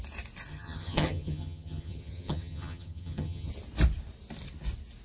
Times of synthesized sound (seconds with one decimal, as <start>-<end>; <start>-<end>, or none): 0.5-3.5